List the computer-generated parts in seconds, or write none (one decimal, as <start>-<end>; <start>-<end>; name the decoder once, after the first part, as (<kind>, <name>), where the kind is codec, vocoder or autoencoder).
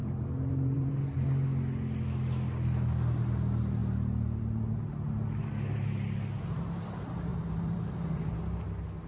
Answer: 0.0-0.9 (vocoder, BigVGAN v2); 7.3-8.4